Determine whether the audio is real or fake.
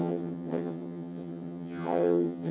fake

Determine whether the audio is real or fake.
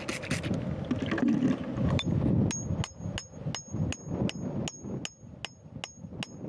real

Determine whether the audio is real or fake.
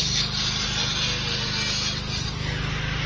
real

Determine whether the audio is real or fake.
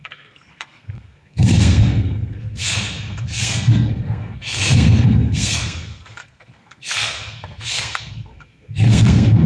fake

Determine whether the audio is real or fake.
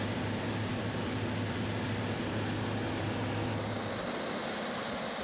real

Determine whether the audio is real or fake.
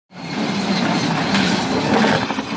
real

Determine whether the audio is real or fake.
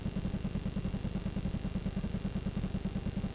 real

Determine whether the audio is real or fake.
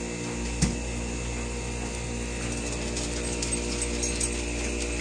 real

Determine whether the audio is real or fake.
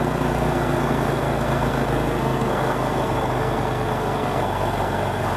fake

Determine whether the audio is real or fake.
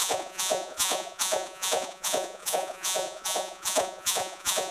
fake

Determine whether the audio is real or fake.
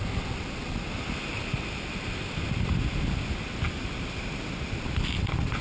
real